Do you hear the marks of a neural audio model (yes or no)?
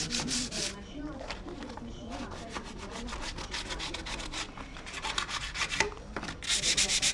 no